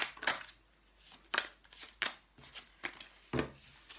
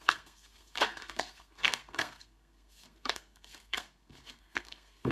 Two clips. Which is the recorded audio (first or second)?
first